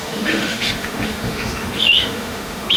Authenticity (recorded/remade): remade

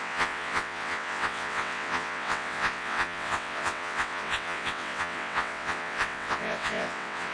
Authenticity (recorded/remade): remade